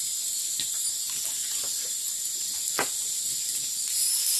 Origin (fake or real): real